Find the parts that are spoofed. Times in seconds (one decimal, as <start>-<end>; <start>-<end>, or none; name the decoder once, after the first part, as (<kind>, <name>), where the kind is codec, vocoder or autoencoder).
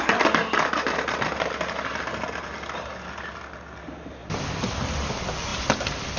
4.2-5.1 (vocoder, BigVGAN v2)